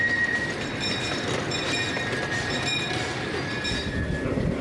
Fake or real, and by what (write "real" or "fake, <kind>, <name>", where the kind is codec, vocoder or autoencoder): real